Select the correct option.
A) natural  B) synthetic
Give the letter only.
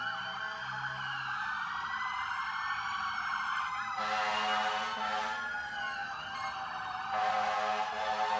A